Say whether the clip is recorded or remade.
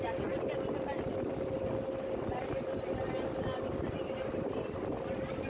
recorded